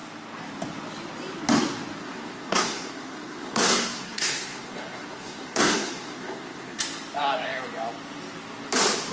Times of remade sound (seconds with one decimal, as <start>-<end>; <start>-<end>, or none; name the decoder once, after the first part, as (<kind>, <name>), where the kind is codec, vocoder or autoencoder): 2.0-6.8 (codec, SNAC)